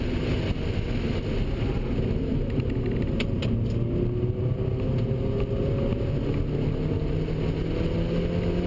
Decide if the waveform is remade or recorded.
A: recorded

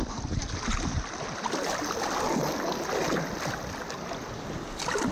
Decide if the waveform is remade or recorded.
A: recorded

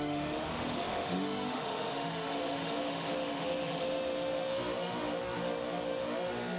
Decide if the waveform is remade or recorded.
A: remade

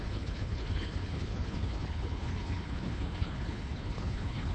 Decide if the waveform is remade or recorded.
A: remade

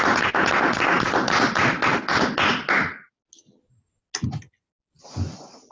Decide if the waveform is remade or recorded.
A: recorded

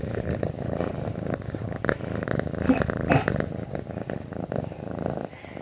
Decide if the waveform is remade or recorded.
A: recorded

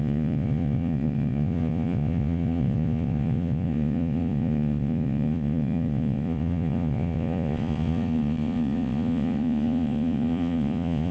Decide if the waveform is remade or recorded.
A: remade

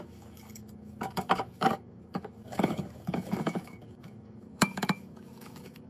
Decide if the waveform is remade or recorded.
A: remade